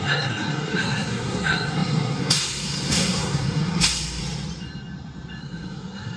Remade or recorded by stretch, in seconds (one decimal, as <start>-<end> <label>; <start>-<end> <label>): 0.0-4.2 remade; 4.2-5.4 recorded; 5.4-6.2 remade